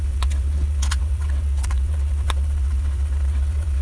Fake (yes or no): yes